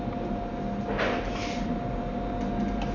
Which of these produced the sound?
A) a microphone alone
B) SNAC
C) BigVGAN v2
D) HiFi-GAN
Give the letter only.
A